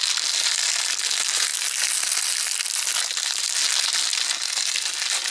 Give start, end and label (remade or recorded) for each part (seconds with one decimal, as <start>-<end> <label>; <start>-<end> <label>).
0.0-5.3 recorded